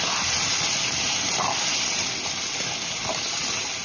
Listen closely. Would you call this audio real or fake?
real